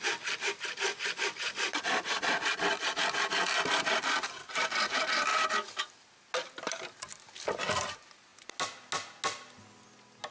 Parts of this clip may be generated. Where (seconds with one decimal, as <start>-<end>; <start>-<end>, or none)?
none